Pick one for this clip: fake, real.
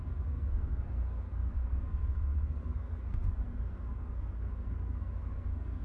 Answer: fake